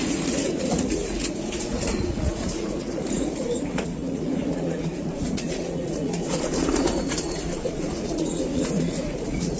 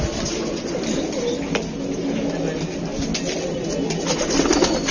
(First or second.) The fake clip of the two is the first